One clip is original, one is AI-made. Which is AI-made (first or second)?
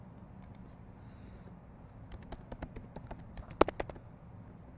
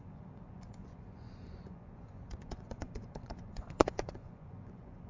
second